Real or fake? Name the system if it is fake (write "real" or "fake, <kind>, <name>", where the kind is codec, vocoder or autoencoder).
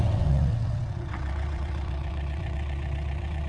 fake, vocoder, WaveNeXt